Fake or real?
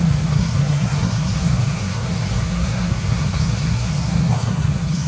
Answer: fake